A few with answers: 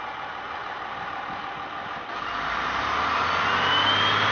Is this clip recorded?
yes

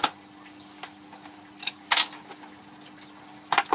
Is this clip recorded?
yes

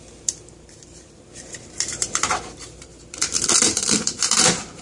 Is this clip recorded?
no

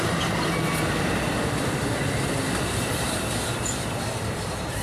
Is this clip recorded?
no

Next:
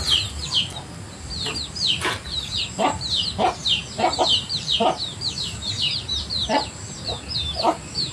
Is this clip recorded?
no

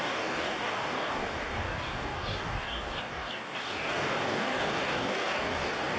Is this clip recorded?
no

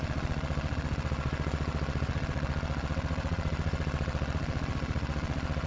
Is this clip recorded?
no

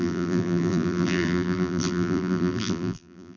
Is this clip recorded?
no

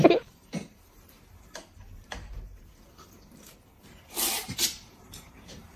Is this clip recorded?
no